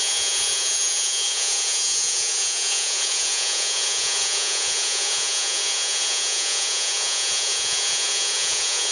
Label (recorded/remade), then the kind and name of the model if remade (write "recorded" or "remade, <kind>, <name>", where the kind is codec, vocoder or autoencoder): remade, vocoder, Vocos